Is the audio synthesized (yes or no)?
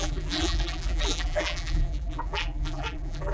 yes